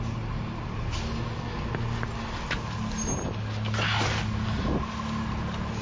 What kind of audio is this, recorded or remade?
recorded